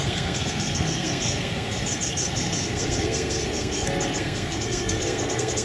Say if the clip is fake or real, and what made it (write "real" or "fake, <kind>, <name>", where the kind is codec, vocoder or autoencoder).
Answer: fake, codec, SNAC